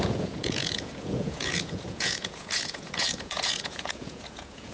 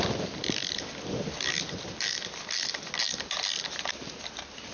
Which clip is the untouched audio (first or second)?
second